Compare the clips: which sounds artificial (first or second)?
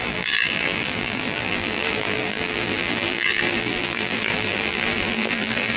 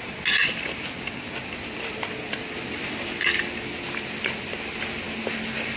first